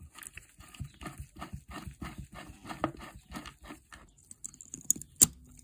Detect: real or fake real